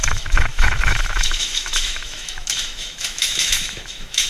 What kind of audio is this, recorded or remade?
remade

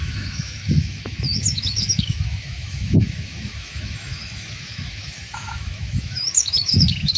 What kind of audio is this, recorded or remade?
remade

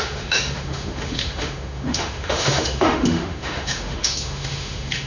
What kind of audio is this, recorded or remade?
remade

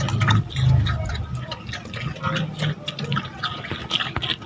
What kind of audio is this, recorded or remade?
recorded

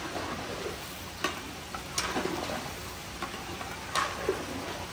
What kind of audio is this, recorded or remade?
recorded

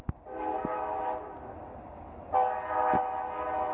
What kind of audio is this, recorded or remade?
recorded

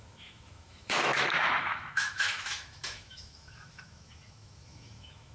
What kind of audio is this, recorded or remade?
remade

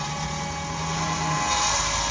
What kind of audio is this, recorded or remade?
recorded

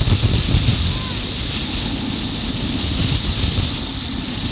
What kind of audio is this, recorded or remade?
recorded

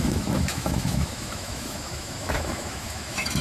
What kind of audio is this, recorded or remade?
remade